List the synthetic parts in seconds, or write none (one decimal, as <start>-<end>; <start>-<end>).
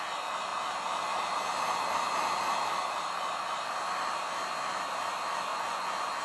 5.5-6.2